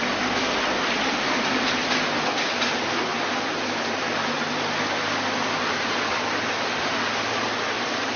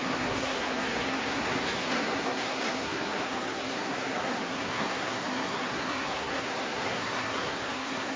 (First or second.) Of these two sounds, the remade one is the second